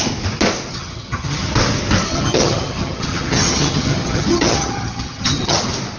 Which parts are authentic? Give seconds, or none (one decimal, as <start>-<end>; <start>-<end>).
0.0-0.7; 1.5-2.0; 5.6-6.0